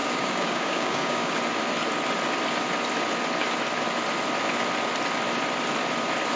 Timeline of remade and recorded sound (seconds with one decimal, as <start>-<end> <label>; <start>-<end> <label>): 0.0-1.3 remade; 1.3-6.4 recorded